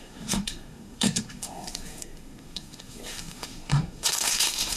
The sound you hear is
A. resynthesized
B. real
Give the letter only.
A